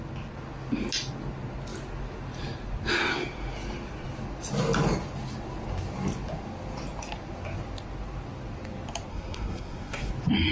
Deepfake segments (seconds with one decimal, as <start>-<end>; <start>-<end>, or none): 9.1-10.1